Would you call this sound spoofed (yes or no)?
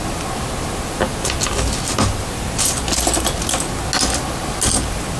no